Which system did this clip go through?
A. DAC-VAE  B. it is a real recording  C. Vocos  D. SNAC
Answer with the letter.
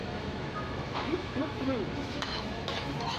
A